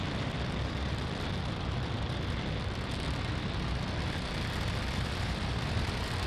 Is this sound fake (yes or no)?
no